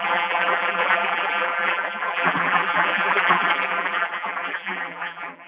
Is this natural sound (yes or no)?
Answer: no